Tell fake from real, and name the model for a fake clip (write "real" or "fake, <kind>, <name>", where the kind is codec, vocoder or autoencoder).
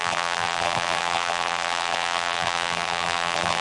fake, vocoder, BigVGAN v2